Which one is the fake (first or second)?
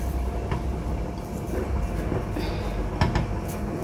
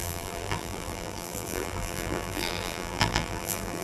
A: second